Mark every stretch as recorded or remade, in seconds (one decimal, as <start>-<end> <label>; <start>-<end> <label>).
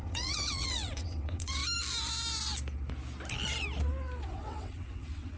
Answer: 0.0-1.6 remade; 1.6-4.2 recorded; 4.2-5.4 remade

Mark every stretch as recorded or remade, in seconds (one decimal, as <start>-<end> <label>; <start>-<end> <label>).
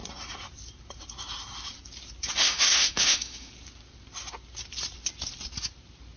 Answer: 0.0-2.4 recorded; 2.4-3.5 remade; 3.5-6.2 recorded